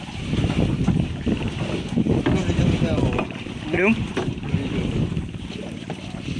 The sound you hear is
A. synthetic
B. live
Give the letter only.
B